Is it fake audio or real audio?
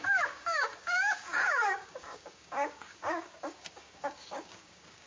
fake